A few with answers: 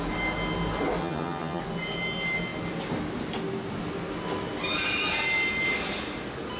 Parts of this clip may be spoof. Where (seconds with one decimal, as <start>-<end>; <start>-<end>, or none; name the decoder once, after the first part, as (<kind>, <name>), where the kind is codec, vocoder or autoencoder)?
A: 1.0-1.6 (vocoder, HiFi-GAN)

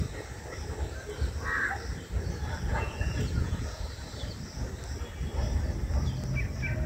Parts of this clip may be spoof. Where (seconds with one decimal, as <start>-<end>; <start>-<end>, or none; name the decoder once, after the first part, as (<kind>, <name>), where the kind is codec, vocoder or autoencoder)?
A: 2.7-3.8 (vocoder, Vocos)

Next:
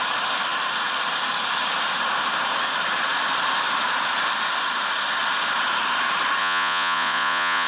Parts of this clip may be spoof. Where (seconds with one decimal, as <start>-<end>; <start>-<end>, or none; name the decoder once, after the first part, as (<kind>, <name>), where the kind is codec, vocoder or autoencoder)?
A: 6.4-7.7 (vocoder, Vocos)